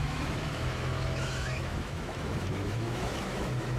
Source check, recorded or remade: remade